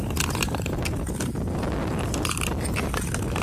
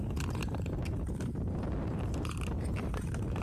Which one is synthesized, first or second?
second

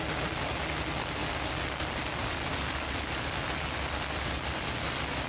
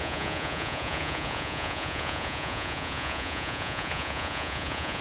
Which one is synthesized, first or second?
second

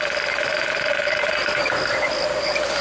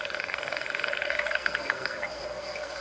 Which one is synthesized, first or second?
second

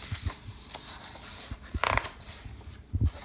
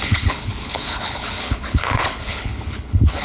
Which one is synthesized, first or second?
second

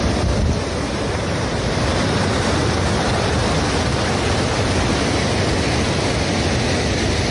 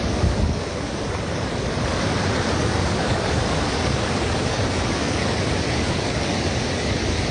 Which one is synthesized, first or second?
second